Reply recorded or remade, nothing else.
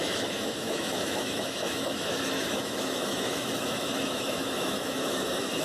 remade